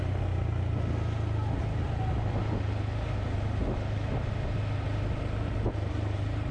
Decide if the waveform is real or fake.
real